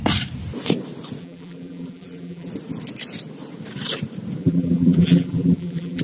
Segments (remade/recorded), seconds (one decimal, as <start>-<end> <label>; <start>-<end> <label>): 0.0-1.2 recorded; 1.2-2.5 remade; 2.5-4.4 recorded; 4.4-6.0 remade